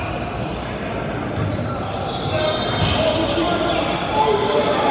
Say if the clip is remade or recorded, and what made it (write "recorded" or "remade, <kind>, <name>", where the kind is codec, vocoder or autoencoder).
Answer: recorded